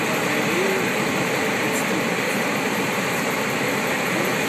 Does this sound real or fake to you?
real